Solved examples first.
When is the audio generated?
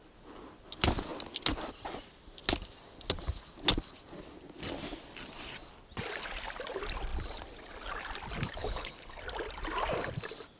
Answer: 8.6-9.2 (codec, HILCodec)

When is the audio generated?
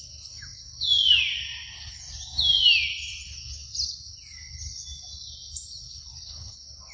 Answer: none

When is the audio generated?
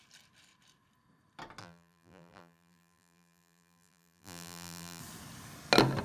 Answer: 1.6-5.0 (vocoder, BigVGAN v2)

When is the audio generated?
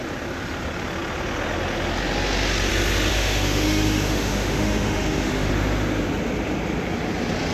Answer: 3.1-5.5 (autoencoder, DAC-VAE)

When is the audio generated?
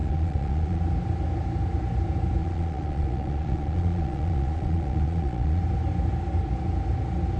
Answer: 0.0-0.8 (vocoder, Vocos); 2.4-5.6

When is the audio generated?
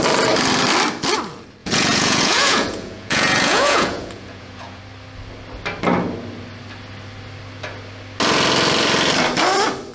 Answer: 1.6-4.8 (vocoder, Vocos)